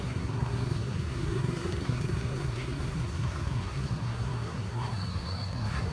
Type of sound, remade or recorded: remade